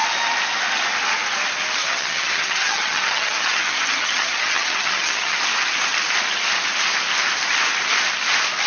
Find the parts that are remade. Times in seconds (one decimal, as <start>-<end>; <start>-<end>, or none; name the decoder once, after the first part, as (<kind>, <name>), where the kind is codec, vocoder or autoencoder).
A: 1.8-5.4 (vocoder, HiFi-GAN)